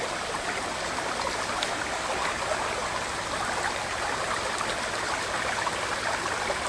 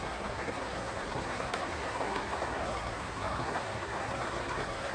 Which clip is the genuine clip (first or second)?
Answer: first